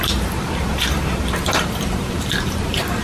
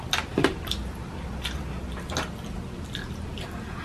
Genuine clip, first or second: second